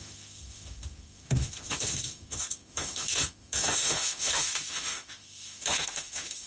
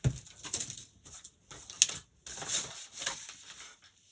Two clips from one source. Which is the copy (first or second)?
first